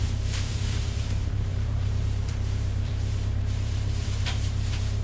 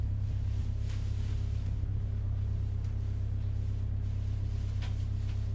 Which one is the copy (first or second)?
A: first